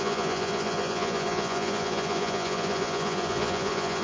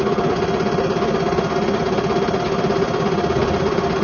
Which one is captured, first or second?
second